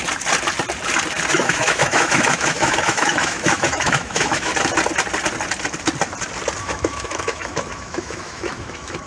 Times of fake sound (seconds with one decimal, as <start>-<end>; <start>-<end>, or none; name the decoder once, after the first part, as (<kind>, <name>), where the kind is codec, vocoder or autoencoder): 1.3-4.5 (autoencoder, DAC-VAE); 6.6-9.1